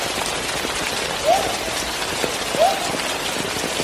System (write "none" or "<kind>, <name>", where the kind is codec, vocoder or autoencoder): none